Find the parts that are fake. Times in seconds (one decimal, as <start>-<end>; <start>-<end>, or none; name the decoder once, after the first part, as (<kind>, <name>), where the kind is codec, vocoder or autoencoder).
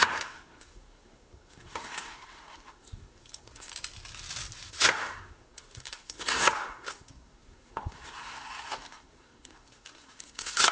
0.0-3.7 (codec, SNAC); 4.7-10.7